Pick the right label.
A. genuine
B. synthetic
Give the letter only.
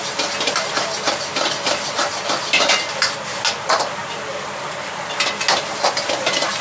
A